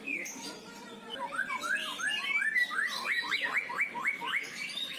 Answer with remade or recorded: recorded